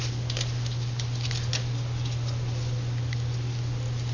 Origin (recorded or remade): recorded